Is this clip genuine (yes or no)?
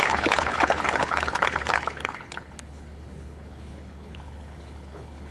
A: no